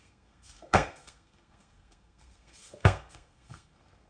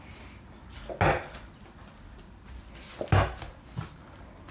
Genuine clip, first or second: second